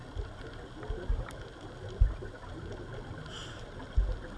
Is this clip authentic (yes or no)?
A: yes